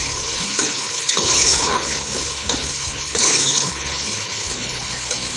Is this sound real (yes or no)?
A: no